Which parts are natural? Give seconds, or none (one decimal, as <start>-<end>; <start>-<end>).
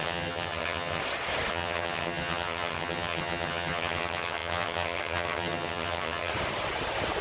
1.0-1.5; 6.3-7.2